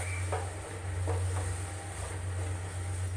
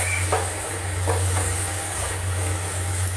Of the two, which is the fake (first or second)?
second